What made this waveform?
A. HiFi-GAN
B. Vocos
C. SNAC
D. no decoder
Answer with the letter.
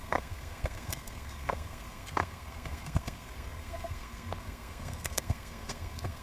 C